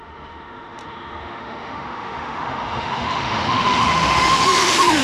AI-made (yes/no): yes